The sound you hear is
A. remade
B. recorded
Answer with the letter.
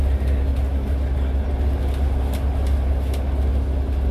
B